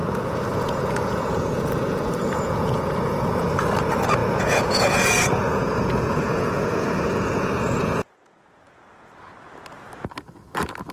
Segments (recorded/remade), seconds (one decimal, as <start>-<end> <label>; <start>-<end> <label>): 0.0-3.6 remade; 3.6-4.2 recorded; 4.2-9.1 remade; 9.1-10.9 recorded